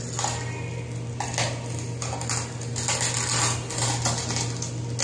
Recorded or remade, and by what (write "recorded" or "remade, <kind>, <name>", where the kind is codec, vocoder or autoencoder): recorded